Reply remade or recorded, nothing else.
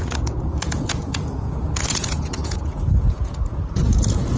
remade